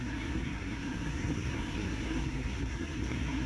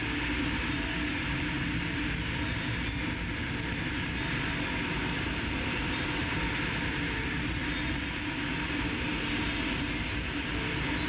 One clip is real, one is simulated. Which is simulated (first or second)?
first